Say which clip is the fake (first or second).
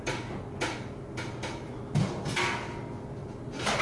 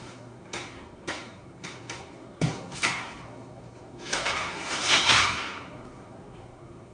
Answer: second